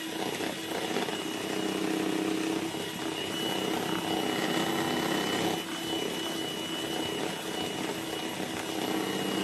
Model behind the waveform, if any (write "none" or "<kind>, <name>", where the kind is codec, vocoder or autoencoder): none